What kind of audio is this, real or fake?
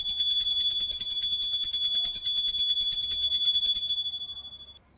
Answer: real